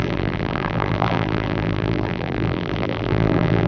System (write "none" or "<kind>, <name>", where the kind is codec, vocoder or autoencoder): vocoder, BigVGAN v2